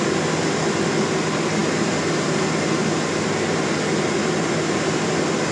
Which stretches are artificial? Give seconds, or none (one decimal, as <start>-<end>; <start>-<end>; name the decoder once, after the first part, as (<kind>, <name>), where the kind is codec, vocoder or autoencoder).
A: none